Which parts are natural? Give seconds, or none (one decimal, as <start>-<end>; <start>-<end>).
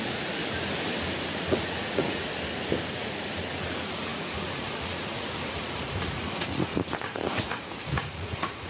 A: 0.4-1.3; 2.3-2.9